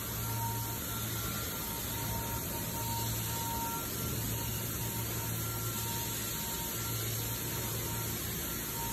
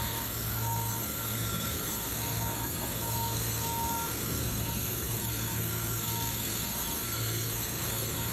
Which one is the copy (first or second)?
second